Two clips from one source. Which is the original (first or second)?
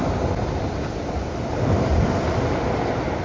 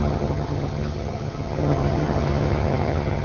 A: first